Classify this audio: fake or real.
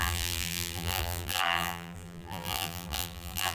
fake